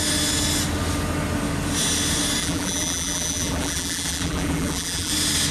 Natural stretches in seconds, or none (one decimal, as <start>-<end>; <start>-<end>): 0.0-2.4; 5.1-5.5